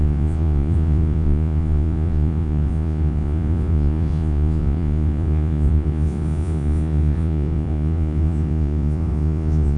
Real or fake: fake